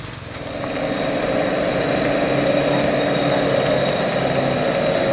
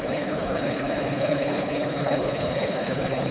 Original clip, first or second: first